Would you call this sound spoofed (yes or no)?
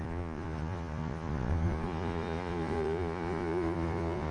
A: yes